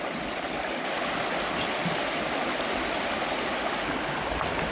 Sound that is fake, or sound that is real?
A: real